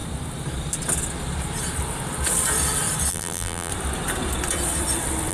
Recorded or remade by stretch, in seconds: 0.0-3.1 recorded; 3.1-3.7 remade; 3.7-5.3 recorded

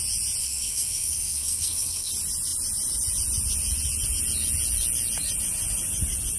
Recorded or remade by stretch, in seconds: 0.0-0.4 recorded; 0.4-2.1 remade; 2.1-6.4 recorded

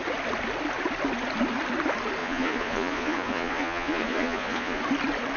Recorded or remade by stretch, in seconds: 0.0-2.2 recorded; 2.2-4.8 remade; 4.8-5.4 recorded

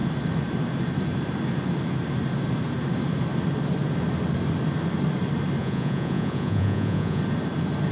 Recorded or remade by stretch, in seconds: 0.0-5.6 recorded; 5.6-7.2 remade; 7.2-7.9 recorded

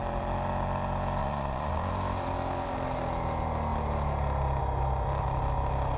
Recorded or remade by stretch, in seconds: 0.0-1.2 recorded; 1.2-1.9 remade; 1.9-6.0 recorded

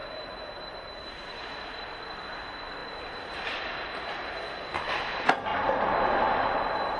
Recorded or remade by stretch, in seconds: 0.0-1.5 remade; 1.5-5.5 recorded; 5.5-7.0 remade

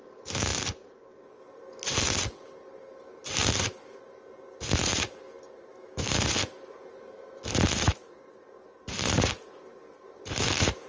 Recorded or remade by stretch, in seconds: 0.0-5.7 recorded; 5.7-6.2 remade; 6.2-10.9 recorded